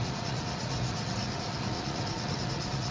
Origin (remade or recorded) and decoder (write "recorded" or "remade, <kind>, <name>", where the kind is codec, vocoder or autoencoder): remade, vocoder, Vocos